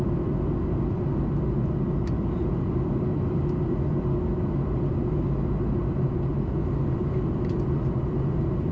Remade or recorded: recorded